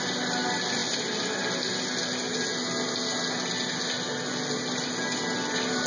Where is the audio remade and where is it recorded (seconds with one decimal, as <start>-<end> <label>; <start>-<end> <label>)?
0.0-5.9 recorded